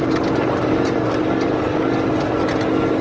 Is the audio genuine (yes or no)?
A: yes